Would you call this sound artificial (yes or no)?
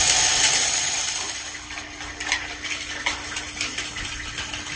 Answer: yes